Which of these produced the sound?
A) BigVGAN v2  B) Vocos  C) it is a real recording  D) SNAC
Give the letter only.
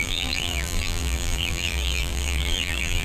A